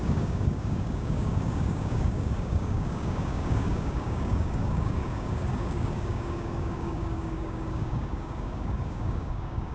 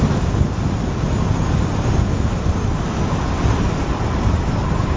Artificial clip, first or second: first